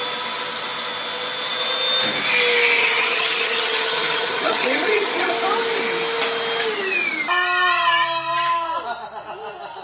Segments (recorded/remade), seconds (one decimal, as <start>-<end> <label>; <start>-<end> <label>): 0.0-2.8 recorded; 2.8-5.3 remade; 5.3-9.8 recorded